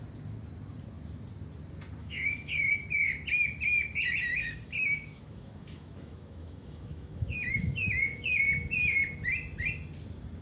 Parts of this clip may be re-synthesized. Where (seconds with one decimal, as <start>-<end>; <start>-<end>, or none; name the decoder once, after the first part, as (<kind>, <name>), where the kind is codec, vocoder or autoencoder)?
2.0-2.7 (autoencoder, DAC-VAE); 4.3-8.3